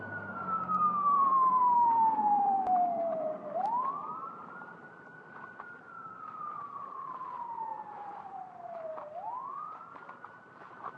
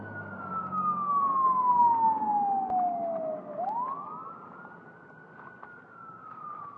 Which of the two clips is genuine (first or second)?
second